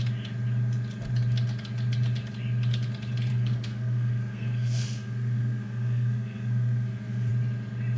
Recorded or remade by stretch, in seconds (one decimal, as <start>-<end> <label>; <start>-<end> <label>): 0.0-3.3 recorded; 3.3-7.3 remade; 7.3-8.0 recorded